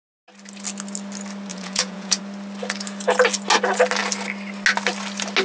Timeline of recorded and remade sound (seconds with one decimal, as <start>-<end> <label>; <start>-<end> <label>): 0.0-1.5 recorded; 1.5-2.2 remade; 2.2-5.4 recorded